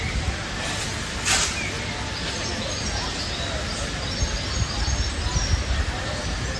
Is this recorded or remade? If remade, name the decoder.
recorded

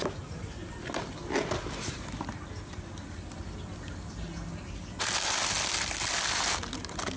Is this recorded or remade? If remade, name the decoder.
recorded